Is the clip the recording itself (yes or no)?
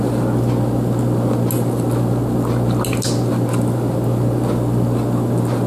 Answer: yes